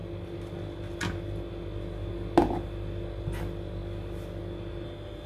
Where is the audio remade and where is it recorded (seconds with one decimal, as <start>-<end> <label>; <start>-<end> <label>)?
0.0-5.3 recorded